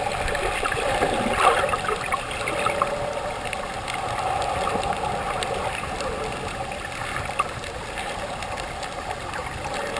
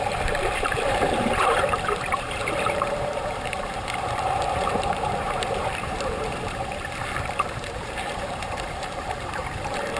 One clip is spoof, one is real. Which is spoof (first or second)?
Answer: second